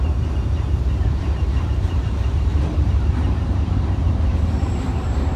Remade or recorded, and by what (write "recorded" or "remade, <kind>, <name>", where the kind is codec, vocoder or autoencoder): remade, vocoder, BigVGAN v2